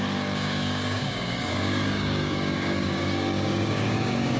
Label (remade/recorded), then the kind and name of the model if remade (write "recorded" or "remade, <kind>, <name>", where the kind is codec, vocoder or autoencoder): remade, codec, DAC